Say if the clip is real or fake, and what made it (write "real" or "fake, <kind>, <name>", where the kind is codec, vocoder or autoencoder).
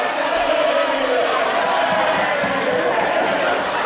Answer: fake, vocoder, BigVGAN v2